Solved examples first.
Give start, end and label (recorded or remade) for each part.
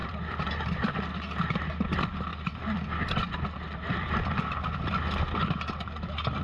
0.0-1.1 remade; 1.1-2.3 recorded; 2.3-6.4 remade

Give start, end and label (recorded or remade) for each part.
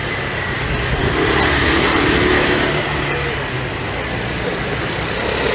0.0-1.0 recorded; 1.0-2.3 remade; 2.3-5.5 recorded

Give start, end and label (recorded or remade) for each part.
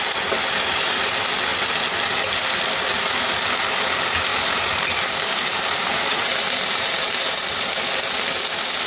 0.0-4.3 recorded; 4.3-7.3 remade; 7.3-8.9 recorded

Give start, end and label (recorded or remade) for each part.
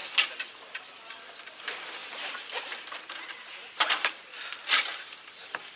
0.0-2.0 recorded; 2.0-5.8 remade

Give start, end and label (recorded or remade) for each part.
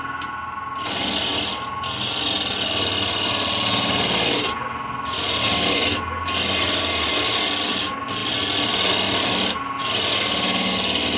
0.0-11.2 recorded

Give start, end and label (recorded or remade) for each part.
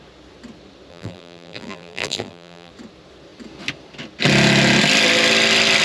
0.0-0.9 recorded; 0.9-2.7 remade; 2.7-5.8 recorded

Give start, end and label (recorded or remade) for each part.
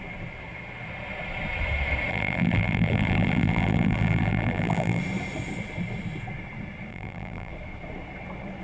0.0-2.1 recorded; 2.1-5.0 remade; 5.0-6.9 recorded; 6.9-7.5 remade; 7.5-8.6 recorded